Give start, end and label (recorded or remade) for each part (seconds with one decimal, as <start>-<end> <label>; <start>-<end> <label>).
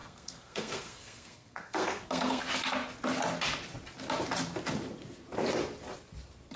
0.0-2.4 remade; 2.4-6.6 recorded